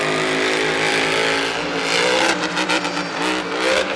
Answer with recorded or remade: recorded